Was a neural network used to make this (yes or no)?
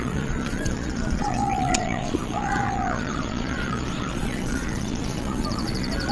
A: yes